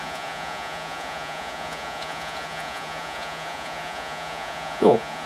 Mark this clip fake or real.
fake